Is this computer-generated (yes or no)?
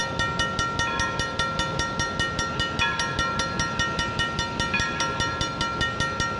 no